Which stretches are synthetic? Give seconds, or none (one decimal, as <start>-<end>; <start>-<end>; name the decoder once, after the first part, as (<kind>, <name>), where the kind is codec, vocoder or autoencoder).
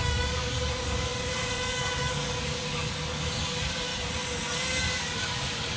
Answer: 0.0-3.9 (codec, DAC); 4.8-5.8